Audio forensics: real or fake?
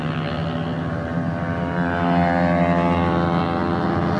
real